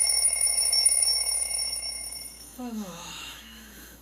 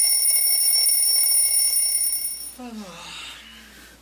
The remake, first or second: first